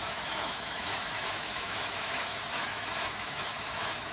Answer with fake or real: fake